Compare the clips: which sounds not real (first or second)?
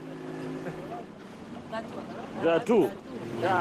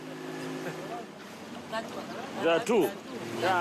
first